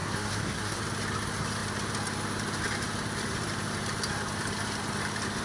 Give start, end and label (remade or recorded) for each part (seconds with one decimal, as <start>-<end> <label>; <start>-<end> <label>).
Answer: 0.0-0.8 remade; 0.8-5.4 recorded